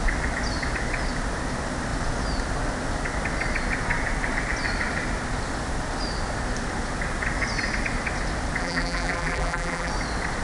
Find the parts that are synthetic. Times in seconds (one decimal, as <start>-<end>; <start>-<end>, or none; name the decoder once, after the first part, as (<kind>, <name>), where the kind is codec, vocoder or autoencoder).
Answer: 8.6-9.9 (vocoder, BigVGAN v2)